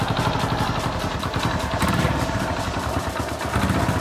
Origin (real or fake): real